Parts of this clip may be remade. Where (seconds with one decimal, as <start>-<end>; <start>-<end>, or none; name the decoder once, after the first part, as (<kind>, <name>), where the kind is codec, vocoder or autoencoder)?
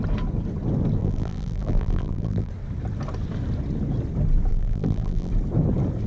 1.0-2.5 (vocoder, BigVGAN v2); 4.5-5.3